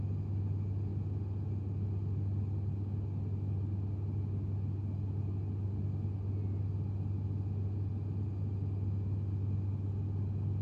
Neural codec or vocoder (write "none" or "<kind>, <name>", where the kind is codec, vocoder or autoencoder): none